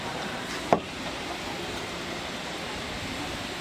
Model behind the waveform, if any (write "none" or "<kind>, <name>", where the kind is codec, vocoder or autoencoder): vocoder, BigVGAN v2